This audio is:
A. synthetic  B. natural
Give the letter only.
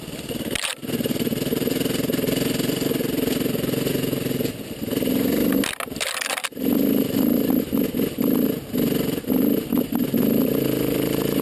B